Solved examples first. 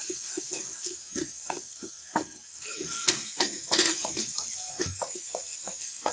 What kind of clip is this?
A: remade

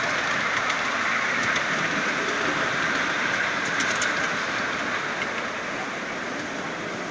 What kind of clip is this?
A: recorded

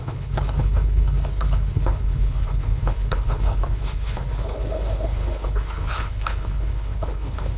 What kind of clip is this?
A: remade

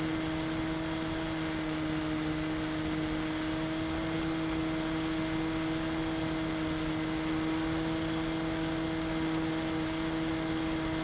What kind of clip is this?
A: recorded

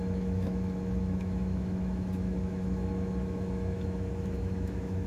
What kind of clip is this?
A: remade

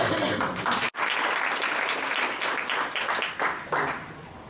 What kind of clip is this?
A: recorded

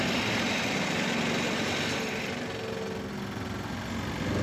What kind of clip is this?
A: recorded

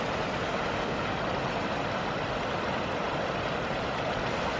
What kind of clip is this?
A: recorded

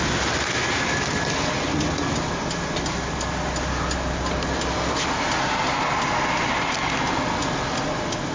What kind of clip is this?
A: recorded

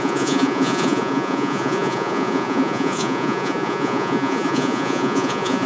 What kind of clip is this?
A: remade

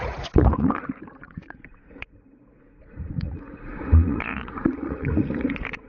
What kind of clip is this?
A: remade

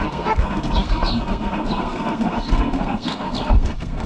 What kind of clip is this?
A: remade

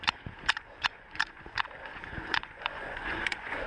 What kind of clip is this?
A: remade